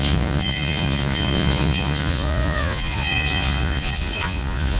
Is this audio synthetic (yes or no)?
yes